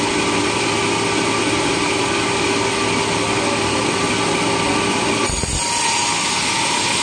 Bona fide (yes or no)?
yes